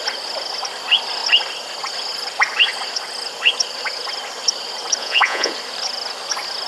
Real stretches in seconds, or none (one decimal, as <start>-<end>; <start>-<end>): 0.0-5.0; 5.5-6.7